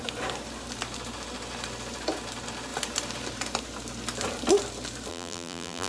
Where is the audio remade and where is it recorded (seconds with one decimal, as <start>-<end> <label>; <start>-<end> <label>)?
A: 0.0-5.1 recorded; 5.1-5.9 remade